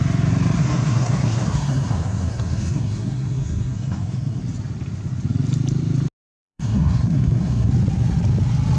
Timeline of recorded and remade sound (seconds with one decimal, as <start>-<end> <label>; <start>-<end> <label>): 0.0-0.6 recorded; 0.6-4.4 remade; 4.4-6.3 recorded; 6.3-7.7 remade; 7.7-8.8 recorded